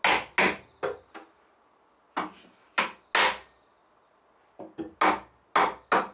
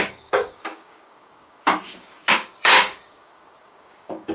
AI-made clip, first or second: second